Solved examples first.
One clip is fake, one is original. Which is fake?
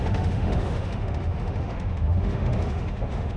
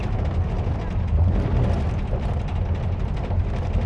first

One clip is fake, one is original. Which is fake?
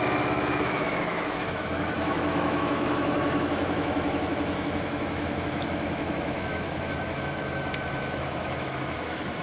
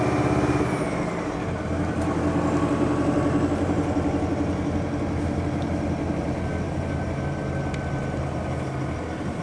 first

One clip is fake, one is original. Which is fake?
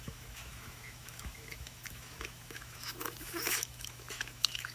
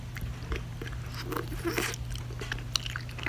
first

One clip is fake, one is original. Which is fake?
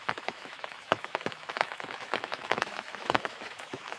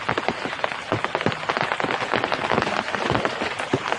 first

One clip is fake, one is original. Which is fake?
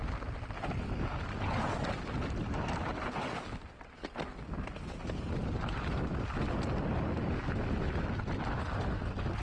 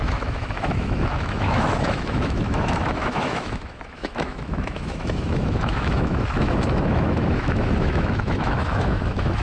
second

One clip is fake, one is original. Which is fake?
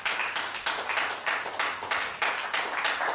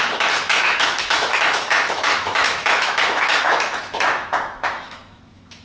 second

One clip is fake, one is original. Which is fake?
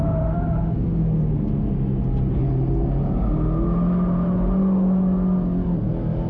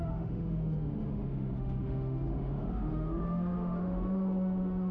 second